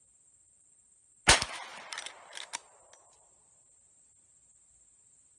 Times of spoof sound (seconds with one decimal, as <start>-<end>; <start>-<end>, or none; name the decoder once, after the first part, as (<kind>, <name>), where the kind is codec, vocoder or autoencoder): none